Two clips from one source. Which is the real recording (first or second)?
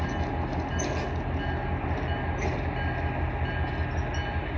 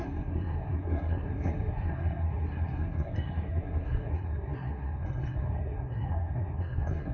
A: first